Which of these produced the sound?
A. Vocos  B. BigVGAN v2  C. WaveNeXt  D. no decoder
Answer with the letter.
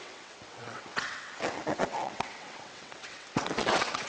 C